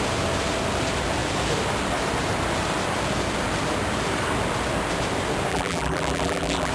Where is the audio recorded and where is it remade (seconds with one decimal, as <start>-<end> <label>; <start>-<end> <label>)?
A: 0.0-5.5 recorded; 5.5-6.7 remade

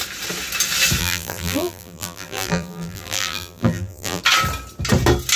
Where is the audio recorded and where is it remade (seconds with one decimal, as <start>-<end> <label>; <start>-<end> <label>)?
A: 0.0-1.0 recorded; 1.0-4.2 remade; 4.2-5.4 recorded

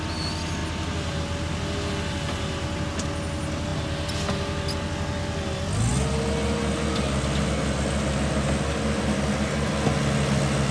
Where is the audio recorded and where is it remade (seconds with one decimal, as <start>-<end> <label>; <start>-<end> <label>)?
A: 0.0-10.7 recorded